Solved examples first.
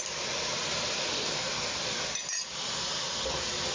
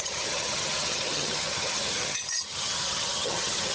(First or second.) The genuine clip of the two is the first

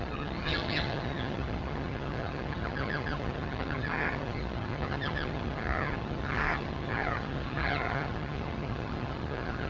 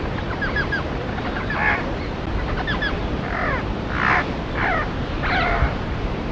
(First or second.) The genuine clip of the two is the second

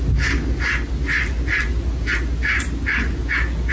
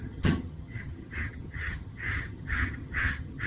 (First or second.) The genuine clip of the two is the first